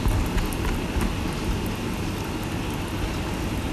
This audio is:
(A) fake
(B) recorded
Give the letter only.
B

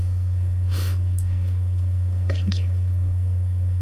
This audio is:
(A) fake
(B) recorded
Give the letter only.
A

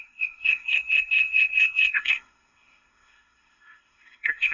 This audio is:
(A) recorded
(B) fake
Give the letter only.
B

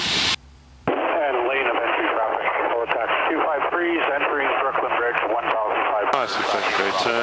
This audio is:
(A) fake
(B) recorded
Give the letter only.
B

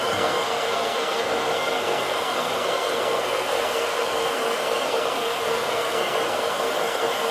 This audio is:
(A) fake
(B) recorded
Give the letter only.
A